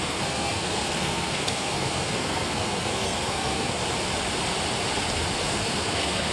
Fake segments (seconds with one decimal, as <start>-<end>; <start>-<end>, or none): 0.0-3.8; 5.4-6.3